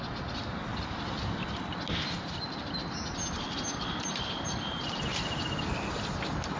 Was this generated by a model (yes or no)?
no